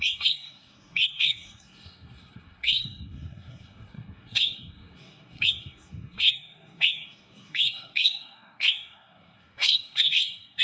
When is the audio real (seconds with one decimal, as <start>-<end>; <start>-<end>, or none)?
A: none